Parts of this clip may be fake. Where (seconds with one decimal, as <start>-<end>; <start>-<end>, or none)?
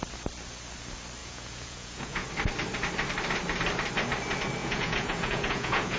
1.2-2.3; 4.6-6.0